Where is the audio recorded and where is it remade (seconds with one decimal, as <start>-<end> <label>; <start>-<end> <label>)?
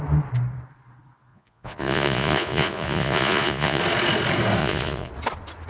0.0-1.3 recorded; 1.3-3.8 remade; 3.8-4.6 recorded; 4.6-5.1 remade; 5.1-5.7 recorded